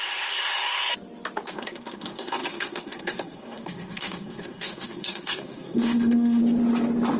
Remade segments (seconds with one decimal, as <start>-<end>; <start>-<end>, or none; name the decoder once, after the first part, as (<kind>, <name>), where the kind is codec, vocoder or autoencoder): 0.0-0.9 (codec, SNAC); 1.5-6.4